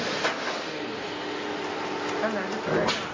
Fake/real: real